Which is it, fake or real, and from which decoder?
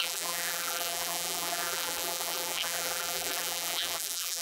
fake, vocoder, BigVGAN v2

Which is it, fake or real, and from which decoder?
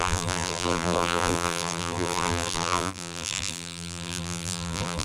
fake, vocoder, BigVGAN v2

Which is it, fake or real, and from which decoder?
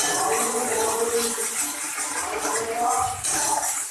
real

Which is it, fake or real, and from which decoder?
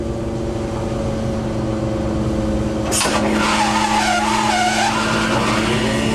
real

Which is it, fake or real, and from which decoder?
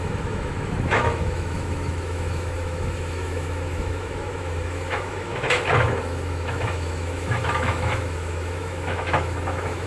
fake, autoencoder, DAC-VAE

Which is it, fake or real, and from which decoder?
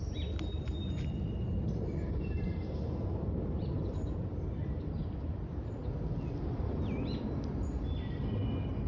real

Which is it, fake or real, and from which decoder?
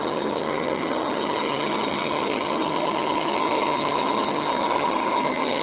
fake, vocoder, HiFi-GAN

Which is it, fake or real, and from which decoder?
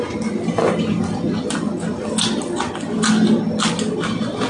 real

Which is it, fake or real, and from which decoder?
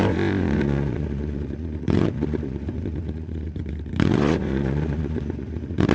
fake, vocoder, Vocos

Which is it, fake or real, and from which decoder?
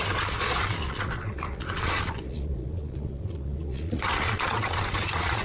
fake, vocoder, Vocos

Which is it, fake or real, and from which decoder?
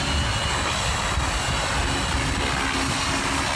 real